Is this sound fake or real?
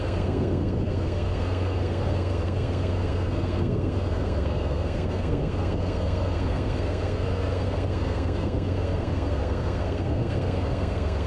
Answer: fake